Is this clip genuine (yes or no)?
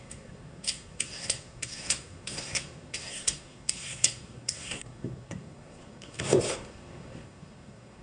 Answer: no